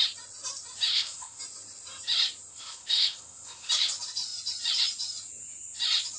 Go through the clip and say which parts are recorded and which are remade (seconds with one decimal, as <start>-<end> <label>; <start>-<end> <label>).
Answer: 0.0-0.9 recorded; 0.9-1.4 remade; 1.4-2.5 recorded; 2.5-3.7 remade; 3.7-6.2 recorded